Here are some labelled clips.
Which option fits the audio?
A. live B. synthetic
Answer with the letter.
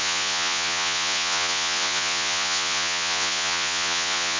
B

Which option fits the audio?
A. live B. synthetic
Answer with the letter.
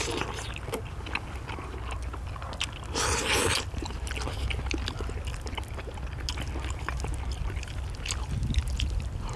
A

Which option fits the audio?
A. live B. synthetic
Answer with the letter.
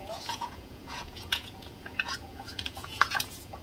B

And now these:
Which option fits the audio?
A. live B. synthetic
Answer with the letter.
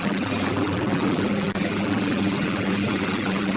B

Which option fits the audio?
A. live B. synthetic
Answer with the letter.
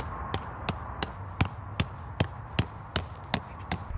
A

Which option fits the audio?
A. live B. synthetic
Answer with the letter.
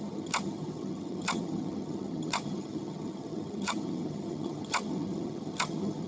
B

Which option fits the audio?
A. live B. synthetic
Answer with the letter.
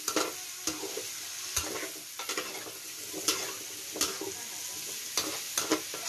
A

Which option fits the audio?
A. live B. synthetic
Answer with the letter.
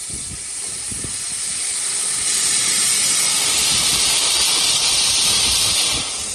B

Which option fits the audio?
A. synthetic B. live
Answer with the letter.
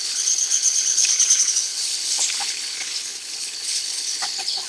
A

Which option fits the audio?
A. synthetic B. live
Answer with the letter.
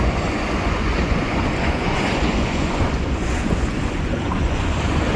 A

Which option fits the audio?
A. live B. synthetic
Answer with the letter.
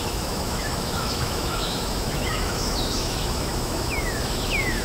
B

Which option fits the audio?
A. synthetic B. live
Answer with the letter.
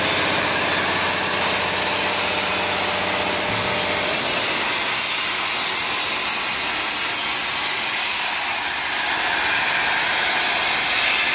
B